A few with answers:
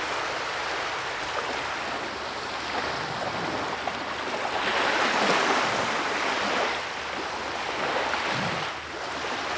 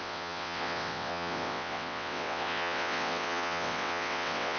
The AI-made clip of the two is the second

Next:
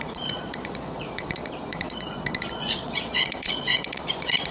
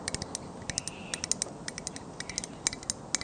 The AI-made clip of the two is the first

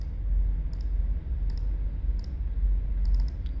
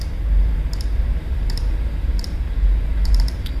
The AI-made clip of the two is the second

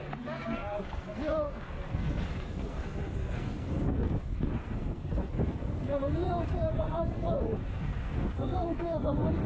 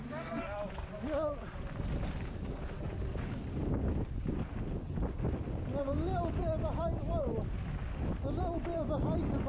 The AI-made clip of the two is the first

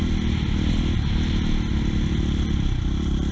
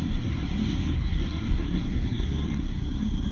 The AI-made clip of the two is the second